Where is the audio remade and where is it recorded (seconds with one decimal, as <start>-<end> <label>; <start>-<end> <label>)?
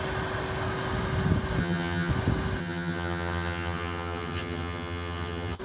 0.0-1.6 recorded; 1.6-2.1 remade; 2.1-2.6 recorded; 2.6-5.6 remade